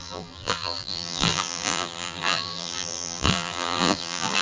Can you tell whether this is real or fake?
fake